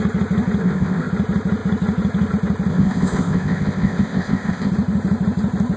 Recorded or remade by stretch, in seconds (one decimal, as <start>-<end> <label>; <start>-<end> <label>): 0.0-0.6 recorded; 0.6-1.1 remade; 1.1-2.7 recorded; 2.7-4.7 remade; 4.7-5.8 recorded